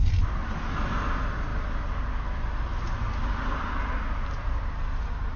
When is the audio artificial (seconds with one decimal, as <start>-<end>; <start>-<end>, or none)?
none